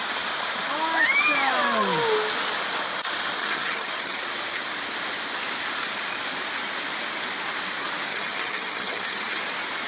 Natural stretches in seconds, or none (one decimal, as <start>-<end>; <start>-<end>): 0.0-3.4; 4.2-8.1; 9.4-9.9